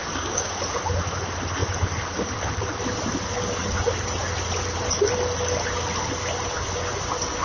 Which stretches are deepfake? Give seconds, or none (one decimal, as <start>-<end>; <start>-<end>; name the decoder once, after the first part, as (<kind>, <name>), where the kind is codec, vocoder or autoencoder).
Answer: 0.0-0.5 (codec, DAC)